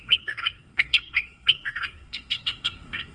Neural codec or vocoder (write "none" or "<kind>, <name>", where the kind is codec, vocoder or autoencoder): codec, SNAC